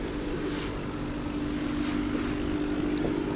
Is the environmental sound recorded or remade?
recorded